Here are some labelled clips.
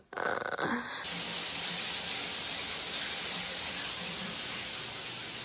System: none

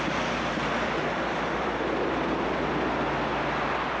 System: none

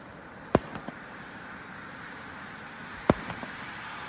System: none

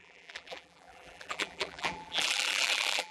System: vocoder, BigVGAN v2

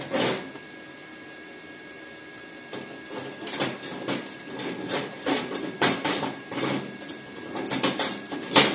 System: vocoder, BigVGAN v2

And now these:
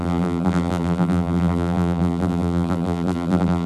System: vocoder, BigVGAN v2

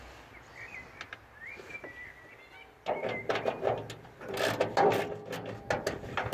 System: none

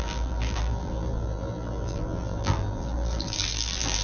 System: vocoder, BigVGAN v2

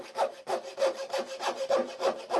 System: vocoder, BigVGAN v2